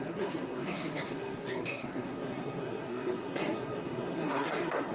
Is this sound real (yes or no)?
no